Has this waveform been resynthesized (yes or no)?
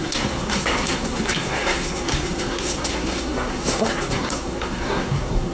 yes